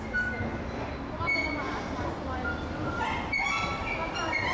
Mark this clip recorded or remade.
recorded